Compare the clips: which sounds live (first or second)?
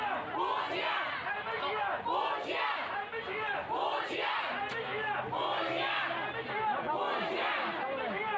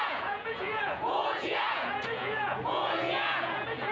first